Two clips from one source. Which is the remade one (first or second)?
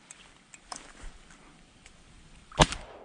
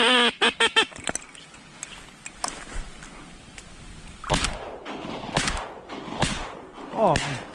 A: first